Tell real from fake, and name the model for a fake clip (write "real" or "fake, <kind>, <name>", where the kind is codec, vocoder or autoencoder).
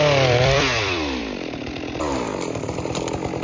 fake, vocoder, BigVGAN v2